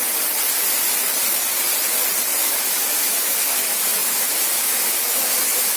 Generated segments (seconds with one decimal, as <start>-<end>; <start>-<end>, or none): 2.4-5.8